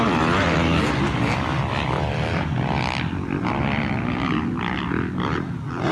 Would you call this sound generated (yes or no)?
no